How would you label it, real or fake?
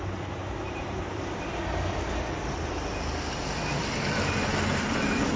fake